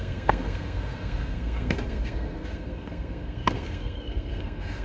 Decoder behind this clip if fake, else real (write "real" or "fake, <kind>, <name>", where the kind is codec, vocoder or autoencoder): fake, codec, SNAC